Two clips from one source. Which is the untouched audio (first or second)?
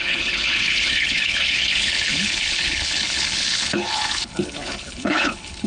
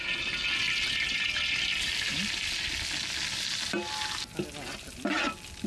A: second